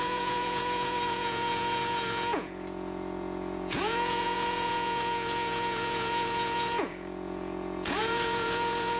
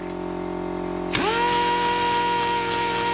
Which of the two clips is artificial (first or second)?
first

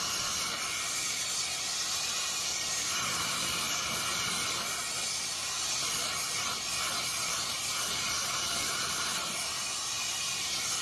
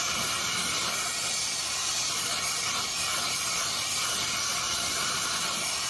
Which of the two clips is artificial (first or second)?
second